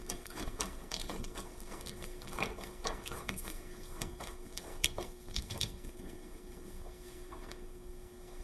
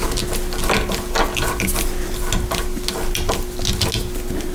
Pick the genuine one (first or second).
second